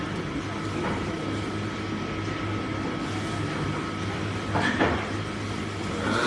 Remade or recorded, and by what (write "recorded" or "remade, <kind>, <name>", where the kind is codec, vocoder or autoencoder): recorded